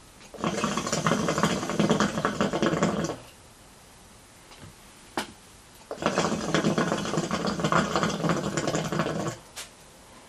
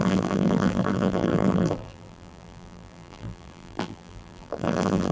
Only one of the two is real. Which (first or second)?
first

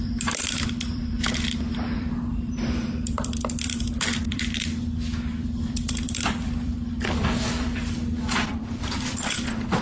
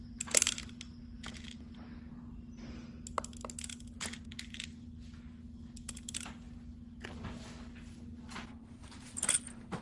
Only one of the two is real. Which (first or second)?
second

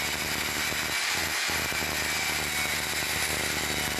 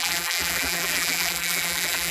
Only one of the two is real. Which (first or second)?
first